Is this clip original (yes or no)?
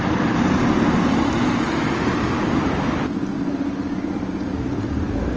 yes